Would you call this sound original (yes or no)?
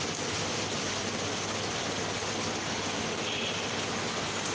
yes